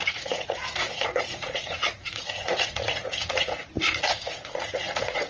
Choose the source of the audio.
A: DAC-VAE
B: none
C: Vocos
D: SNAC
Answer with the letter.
C